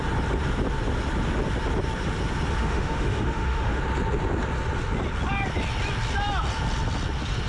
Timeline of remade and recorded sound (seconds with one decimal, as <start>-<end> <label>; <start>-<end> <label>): 0.0-2.6 recorded; 2.6-3.8 remade; 3.8-7.5 recorded